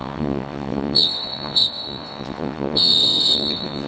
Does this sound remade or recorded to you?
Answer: remade